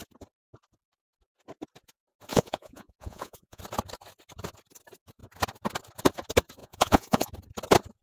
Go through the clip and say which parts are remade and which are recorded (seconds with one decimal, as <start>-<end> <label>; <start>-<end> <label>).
0.0-2.3 recorded; 2.3-3.6 remade; 3.6-6.6 recorded; 6.6-7.3 remade; 7.3-8.0 recorded